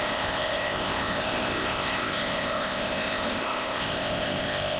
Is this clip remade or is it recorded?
remade